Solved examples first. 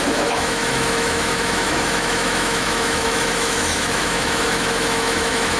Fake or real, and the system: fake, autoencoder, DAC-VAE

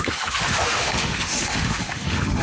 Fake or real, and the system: fake, autoencoder, DAC-VAE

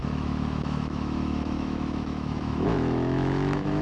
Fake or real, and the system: fake, autoencoder, DAC-VAE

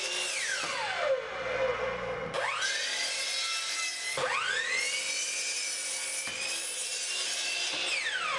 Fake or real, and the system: real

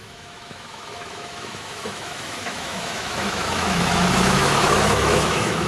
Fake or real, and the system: fake, autoencoder, DAC-VAE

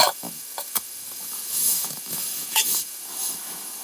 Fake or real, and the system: fake, autoencoder, DAC-VAE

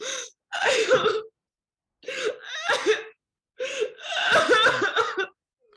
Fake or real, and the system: real